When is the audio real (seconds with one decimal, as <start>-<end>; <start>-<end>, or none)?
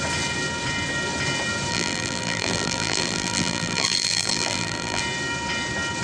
0.0-1.7; 5.0-6.0